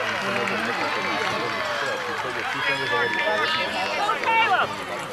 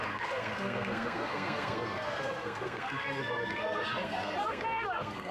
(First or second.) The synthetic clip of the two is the second